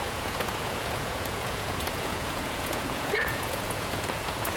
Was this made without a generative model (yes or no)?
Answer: no